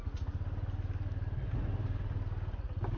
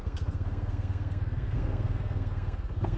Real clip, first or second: first